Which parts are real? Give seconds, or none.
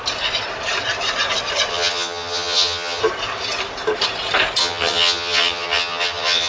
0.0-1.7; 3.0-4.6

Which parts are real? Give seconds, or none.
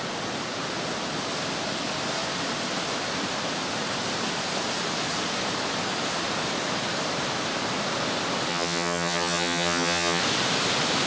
0.0-8.5; 10.2-11.1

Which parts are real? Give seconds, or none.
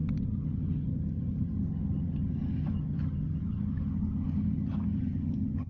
none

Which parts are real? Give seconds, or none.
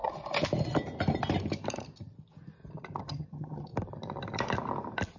0.0-3.0; 3.7-5.2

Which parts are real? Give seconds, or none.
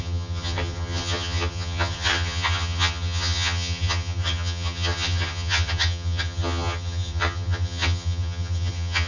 none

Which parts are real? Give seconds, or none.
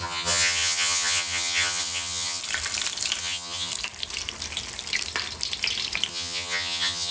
2.4-3.2; 3.7-6.1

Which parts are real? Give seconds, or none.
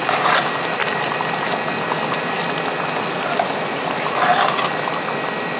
0.0-5.6